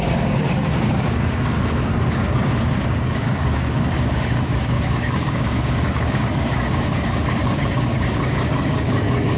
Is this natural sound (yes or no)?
no